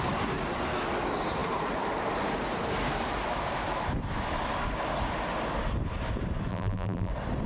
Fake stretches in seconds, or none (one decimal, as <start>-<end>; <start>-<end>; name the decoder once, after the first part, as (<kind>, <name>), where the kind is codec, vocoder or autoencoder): 6.5-7.1 (vocoder, BigVGAN v2)